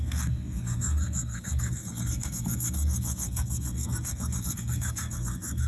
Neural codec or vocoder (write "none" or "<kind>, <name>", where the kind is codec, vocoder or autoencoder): codec, SNAC